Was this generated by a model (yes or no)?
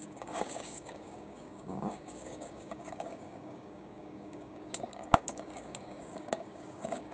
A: yes